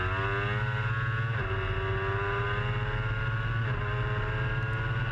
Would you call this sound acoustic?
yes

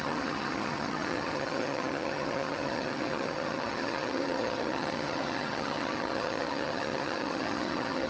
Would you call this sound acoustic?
no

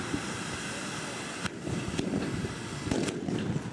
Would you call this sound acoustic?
yes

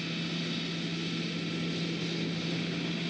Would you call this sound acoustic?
yes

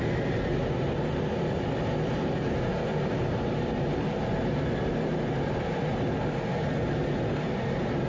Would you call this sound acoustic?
yes